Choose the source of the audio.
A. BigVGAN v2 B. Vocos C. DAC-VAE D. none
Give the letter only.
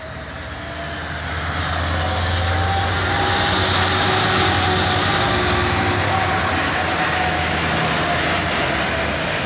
D